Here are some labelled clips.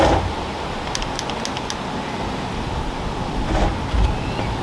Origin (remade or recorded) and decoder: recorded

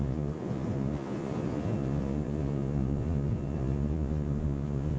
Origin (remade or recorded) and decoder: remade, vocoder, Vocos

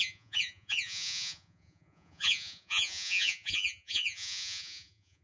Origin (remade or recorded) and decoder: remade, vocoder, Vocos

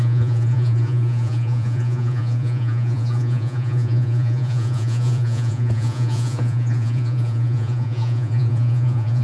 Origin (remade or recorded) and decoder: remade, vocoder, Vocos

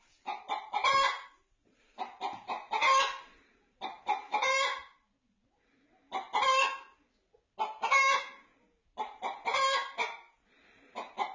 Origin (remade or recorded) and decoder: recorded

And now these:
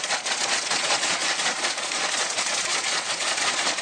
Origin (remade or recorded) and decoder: remade, vocoder, Vocos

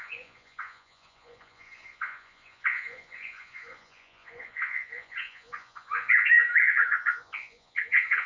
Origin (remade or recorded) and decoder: remade, vocoder, Vocos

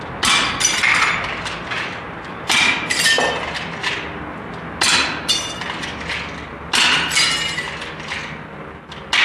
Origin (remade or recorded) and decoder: recorded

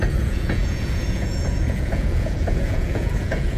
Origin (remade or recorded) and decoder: remade, vocoder, Vocos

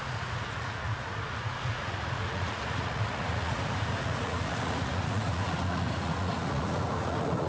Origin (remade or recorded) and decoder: remade, vocoder, Vocos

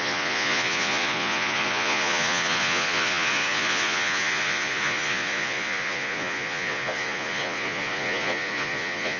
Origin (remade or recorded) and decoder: remade, vocoder, Vocos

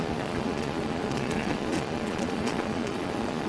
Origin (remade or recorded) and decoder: remade, vocoder, Vocos